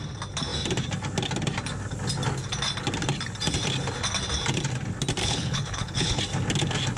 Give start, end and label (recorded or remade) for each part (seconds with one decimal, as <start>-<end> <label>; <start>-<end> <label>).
0.0-5.2 recorded; 5.2-6.2 remade; 6.2-7.0 recorded